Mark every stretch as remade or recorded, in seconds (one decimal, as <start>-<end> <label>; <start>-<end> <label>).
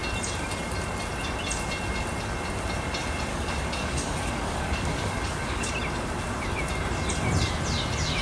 0.0-3.3 recorded; 3.3-5.7 remade; 5.7-8.2 recorded